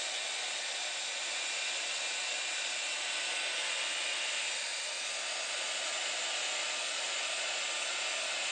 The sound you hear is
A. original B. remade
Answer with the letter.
A